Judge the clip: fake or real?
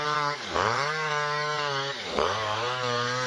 fake